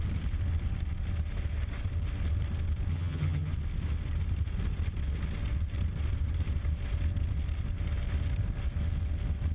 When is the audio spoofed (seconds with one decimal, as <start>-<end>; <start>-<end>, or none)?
2.9-3.5